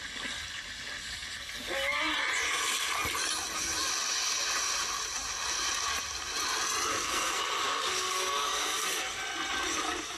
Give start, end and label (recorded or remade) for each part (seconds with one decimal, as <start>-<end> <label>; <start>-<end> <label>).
0.0-6.9 recorded; 6.9-9.2 remade; 9.2-10.2 recorded